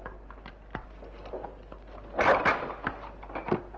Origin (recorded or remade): recorded